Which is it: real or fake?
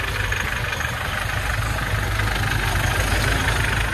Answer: real